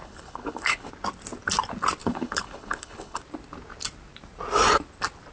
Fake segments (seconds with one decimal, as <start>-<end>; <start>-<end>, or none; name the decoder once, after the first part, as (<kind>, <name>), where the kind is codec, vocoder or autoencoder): 0.0-0.9 (codec, HILCodec); 2.0-3.2